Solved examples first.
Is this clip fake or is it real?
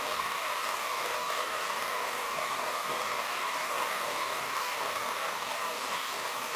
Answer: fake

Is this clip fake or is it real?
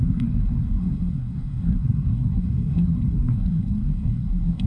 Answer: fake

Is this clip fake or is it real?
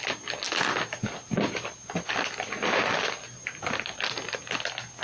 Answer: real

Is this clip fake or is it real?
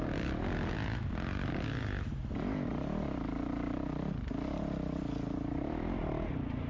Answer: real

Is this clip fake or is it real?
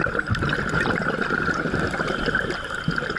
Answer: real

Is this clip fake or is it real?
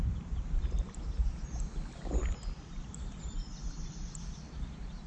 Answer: real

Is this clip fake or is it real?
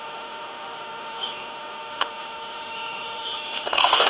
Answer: fake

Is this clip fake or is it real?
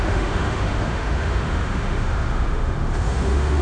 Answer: fake